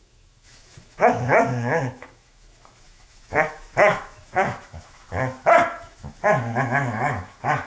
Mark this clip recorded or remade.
remade